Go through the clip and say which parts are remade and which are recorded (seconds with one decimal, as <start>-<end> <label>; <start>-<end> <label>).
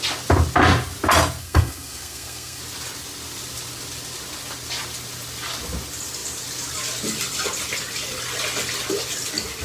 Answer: 0.0-1.4 recorded; 1.4-2.6 remade; 2.6-9.6 recorded